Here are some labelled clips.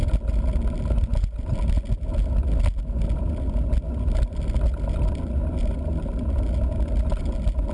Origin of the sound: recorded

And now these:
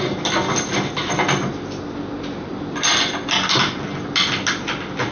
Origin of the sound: recorded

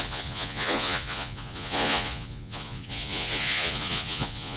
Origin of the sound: remade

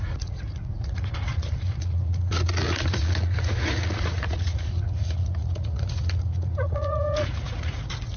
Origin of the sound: remade